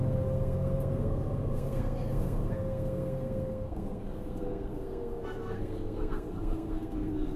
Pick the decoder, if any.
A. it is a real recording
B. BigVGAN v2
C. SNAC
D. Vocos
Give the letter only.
C